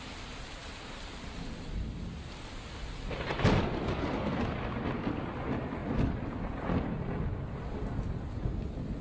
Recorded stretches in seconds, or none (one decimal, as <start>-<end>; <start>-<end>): 0.0-9.0